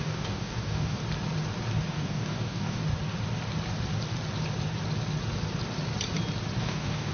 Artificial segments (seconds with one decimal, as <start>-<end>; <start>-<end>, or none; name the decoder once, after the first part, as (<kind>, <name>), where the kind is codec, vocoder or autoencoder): 0.0-1.0 (codec, DAC); 1.9-2.8; 6.6-7.1